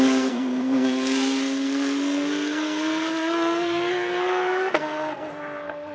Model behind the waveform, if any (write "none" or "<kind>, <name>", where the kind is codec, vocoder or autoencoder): codec, SNAC